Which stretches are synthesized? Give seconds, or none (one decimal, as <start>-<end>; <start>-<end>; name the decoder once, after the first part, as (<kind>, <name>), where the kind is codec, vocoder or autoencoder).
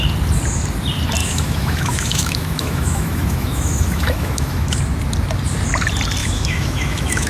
1.2-4.8 (autoencoder, DAC-VAE); 6.2-7.3